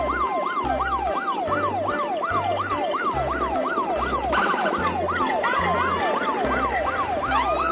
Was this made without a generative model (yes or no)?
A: yes